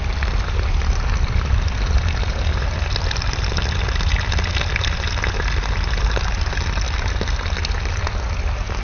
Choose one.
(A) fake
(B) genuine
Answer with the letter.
B